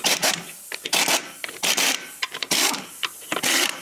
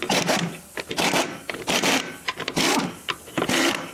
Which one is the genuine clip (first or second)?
second